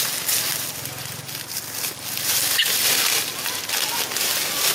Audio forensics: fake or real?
real